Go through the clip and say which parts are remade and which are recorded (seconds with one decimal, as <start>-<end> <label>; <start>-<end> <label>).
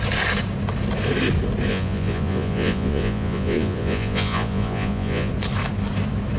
0.0-1.7 recorded; 1.7-5.3 remade; 5.3-6.4 recorded